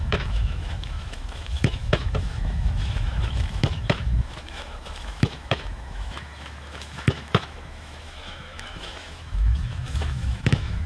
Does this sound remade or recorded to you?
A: remade